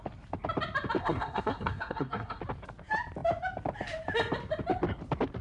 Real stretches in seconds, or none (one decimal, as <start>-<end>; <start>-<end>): 0.0-1.0; 2.4-5.4